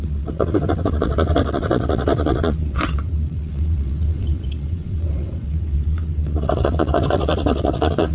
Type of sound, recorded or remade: remade